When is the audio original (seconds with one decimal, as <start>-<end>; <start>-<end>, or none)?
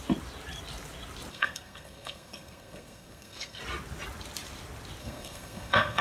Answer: 0.0-1.3; 3.6-5.0